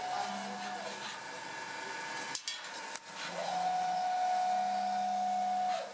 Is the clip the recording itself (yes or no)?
yes